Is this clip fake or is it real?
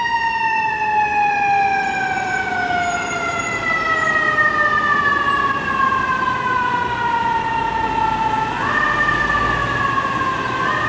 real